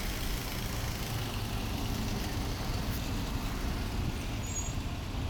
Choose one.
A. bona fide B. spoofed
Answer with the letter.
A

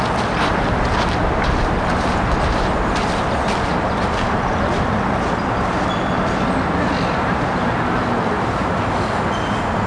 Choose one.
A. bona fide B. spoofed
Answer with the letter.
A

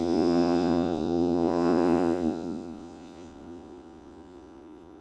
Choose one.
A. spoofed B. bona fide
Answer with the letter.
A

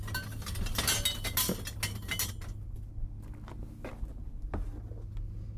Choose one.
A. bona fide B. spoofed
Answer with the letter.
A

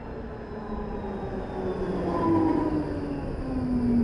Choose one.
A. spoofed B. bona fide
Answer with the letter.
B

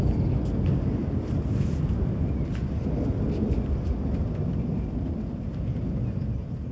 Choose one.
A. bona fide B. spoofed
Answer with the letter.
A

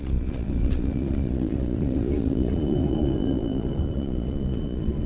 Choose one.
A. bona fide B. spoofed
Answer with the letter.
B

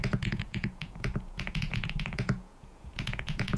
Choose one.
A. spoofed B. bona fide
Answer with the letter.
A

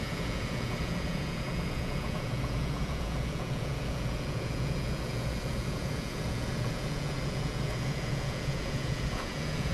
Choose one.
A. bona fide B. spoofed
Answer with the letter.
B